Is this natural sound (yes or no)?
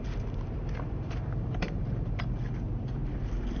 no